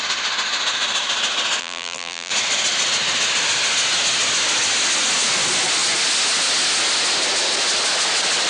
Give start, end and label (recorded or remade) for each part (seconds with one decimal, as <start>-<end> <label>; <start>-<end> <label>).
0.0-1.6 recorded; 1.6-2.3 remade; 2.3-8.5 recorded